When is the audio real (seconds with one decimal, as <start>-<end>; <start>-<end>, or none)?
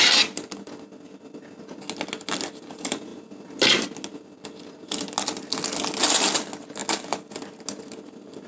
0.0-8.5